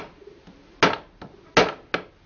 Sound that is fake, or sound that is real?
real